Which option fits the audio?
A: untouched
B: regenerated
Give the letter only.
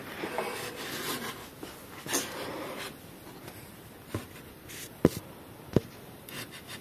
A